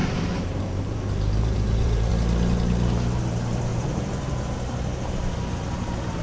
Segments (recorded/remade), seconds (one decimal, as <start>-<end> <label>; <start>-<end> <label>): 0.0-2.1 remade; 2.1-3.7 recorded; 3.7-4.4 remade; 4.4-6.2 recorded